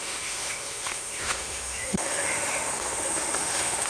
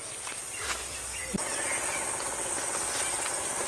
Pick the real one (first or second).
second